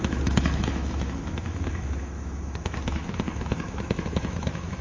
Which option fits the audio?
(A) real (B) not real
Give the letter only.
B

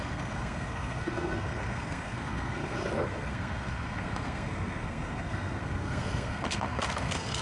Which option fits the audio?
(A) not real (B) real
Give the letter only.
A